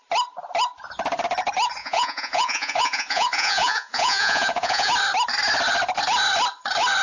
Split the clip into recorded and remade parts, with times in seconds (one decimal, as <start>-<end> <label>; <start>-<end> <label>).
0.0-1.8 recorded; 1.8-4.9 remade; 4.9-7.0 recorded